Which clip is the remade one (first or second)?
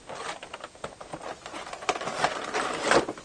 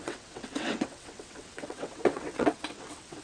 second